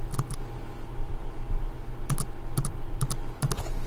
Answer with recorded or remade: recorded